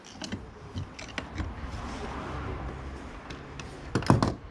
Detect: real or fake real